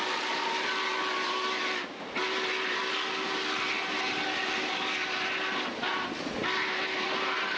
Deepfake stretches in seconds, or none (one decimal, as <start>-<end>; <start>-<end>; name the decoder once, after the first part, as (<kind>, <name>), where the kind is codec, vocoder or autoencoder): none